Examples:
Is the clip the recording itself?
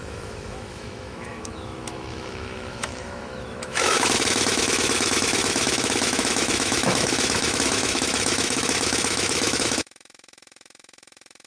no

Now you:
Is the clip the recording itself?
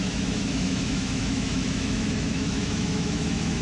no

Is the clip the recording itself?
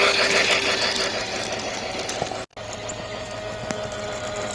yes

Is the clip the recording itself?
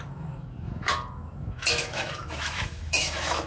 no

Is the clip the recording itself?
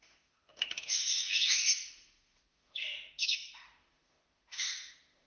no